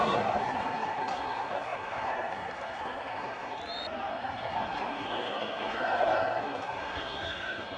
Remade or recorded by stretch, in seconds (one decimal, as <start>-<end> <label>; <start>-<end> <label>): 0.0-3.6 remade; 3.6-4.1 recorded; 4.1-7.8 remade